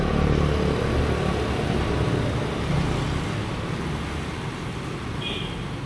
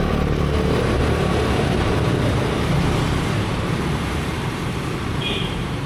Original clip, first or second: first